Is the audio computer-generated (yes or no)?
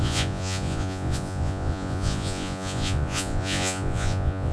yes